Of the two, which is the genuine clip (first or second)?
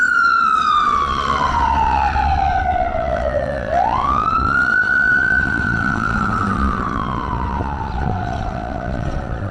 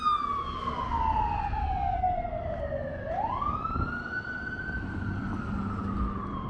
second